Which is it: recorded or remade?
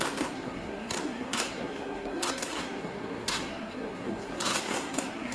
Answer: remade